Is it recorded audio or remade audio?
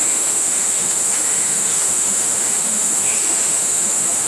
remade